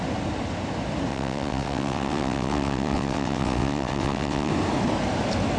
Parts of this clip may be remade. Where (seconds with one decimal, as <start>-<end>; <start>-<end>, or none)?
1.1-4.5